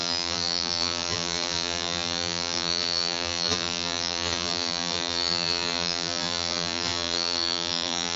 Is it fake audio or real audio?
fake